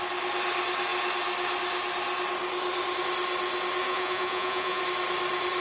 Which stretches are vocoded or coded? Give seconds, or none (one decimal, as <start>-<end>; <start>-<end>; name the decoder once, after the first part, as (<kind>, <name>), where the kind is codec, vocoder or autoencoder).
3.8-4.8 (vocoder, Vocos)